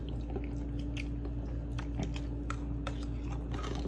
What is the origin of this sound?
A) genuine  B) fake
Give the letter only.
A